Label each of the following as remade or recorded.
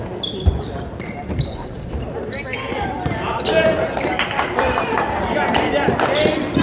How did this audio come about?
recorded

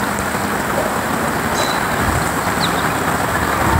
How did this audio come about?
recorded